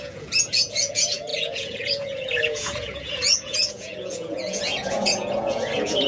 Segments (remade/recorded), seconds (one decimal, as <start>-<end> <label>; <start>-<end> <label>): 0.0-6.1 remade